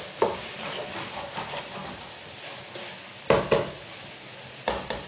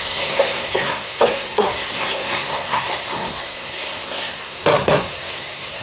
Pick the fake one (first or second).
second